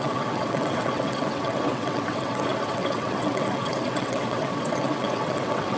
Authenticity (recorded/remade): remade